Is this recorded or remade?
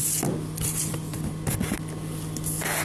recorded